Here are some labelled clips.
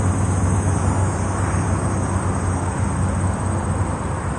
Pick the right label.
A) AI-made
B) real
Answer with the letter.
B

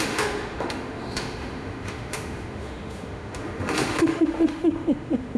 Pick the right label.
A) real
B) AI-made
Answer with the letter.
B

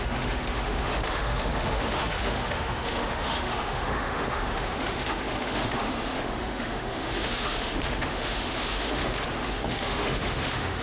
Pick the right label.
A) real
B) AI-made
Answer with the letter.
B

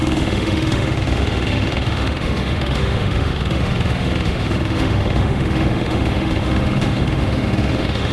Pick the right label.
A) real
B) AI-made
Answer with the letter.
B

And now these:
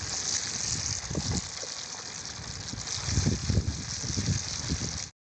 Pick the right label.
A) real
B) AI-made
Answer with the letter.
A